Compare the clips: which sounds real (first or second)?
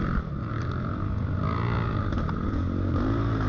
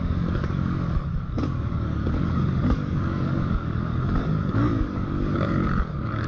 first